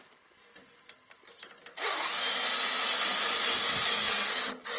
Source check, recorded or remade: recorded